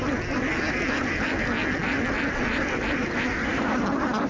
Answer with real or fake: real